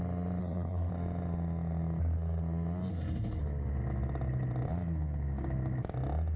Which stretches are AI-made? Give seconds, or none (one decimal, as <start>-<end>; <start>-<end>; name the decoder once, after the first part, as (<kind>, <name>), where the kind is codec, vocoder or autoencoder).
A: 0.4-0.9 (codec, SNAC); 2.9-3.4